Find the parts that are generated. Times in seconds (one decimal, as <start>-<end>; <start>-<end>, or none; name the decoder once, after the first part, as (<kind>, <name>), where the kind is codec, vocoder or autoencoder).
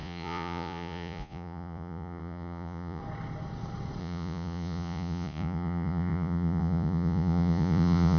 0.0-3.0 (vocoder, Vocos); 4.0-8.2